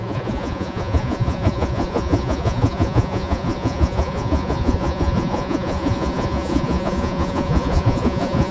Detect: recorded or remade remade